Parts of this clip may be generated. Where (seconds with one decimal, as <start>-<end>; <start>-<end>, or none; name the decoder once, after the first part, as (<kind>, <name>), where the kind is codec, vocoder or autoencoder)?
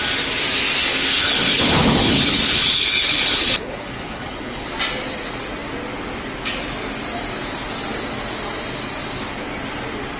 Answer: 0.8-4.7 (codec, HILCodec)